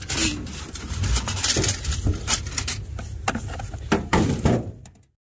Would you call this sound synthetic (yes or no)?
no